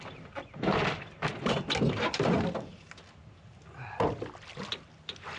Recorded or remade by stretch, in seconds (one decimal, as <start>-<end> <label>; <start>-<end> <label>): 0.0-5.4 recorded